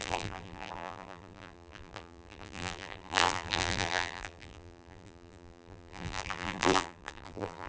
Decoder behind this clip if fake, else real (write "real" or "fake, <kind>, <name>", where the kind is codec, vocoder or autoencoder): fake, vocoder, BigVGAN v2